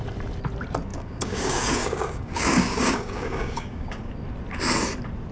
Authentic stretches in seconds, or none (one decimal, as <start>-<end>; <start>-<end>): 0.0-0.9; 4.1-5.3